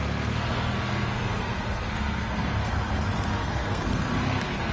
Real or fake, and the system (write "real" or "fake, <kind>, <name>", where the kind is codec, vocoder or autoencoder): fake, codec, SNAC